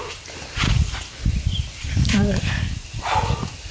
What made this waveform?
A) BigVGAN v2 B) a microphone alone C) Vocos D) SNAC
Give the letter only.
B